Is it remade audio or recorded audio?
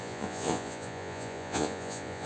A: remade